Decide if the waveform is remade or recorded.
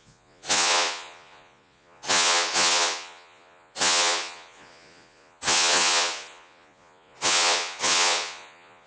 remade